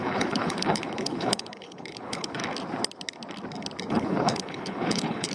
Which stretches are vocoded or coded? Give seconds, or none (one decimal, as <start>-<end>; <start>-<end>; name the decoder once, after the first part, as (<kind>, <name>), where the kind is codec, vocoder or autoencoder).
0.0-2.4 (codec, HILCodec); 3.9-5.3